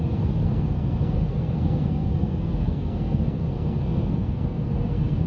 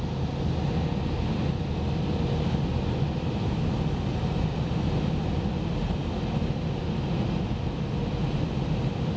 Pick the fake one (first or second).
first